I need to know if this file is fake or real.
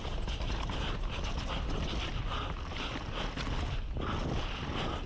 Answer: real